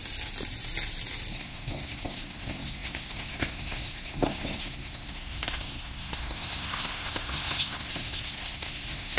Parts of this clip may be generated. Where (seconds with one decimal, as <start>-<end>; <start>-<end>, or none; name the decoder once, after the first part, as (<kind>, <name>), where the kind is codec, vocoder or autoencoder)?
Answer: 1.3-9.2 (codec, SNAC)